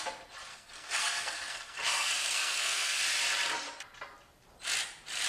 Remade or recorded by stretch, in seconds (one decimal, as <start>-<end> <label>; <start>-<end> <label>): 0.0-0.5 recorded; 0.5-3.0 remade; 3.0-5.3 recorded